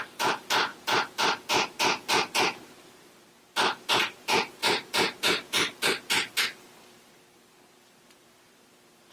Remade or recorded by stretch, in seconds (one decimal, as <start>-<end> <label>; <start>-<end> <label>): 0.0-0.7 remade; 0.7-2.3 recorded; 2.3-9.1 remade